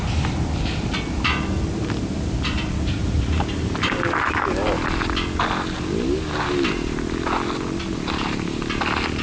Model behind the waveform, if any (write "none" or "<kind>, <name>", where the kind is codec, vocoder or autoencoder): none